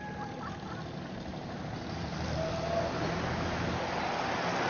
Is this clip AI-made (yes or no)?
no